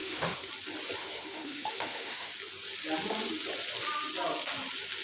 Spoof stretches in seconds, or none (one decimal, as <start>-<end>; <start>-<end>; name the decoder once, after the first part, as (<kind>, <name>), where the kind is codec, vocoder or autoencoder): 0.0-0.5 (autoencoder, DAC-VAE); 1.0-2.3